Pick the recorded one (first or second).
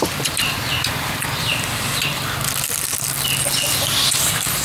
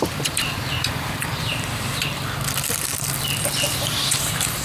first